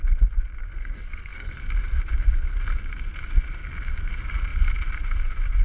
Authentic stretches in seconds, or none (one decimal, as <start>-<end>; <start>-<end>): 0.0-0.8; 1.5-5.6